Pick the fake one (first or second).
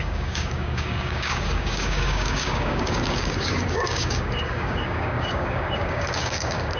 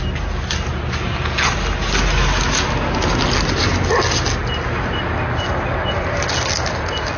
first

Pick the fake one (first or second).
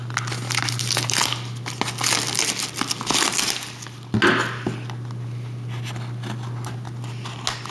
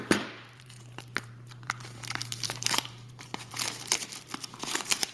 second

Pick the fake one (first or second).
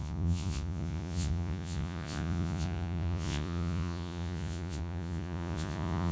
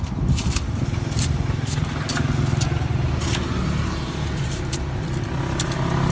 first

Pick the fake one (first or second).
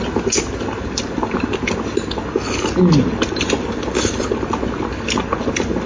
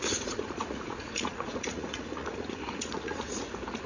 second